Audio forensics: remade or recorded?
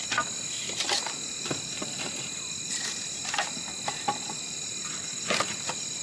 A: recorded